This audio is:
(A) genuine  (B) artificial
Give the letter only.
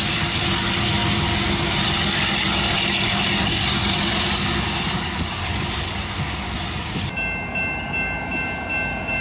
A